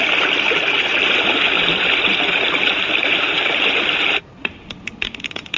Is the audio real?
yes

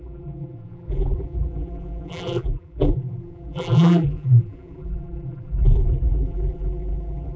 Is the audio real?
no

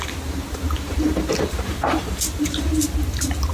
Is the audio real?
no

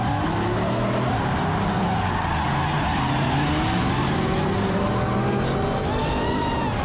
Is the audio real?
yes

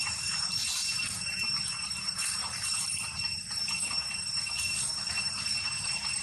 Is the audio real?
no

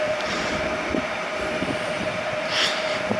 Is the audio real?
no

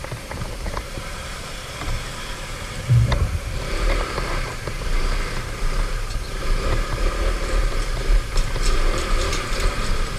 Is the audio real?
no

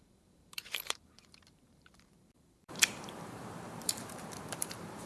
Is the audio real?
no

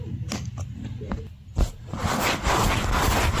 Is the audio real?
yes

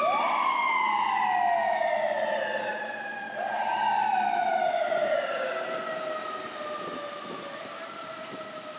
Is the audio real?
yes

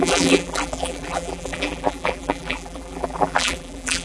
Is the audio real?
no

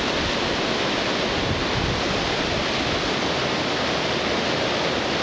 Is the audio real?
yes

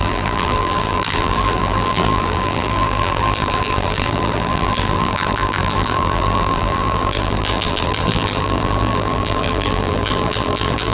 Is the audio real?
no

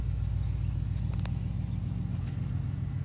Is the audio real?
yes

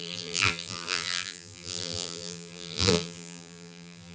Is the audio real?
no